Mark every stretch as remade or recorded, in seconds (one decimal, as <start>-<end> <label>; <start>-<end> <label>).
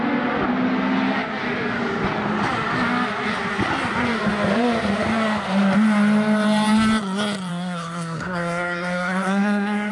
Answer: 0.0-7.5 recorded; 7.5-9.9 remade